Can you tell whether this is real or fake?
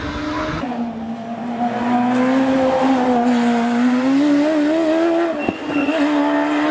real